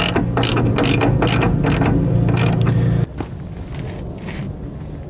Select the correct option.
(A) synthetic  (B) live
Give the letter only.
B